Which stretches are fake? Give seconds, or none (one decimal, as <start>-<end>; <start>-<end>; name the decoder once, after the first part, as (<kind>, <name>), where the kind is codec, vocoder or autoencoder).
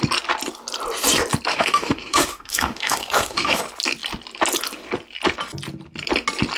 1.5-3.6 (autoencoder, DAC-VAE)